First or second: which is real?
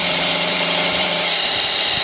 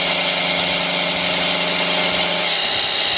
second